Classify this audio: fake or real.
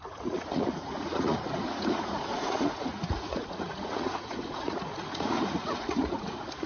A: fake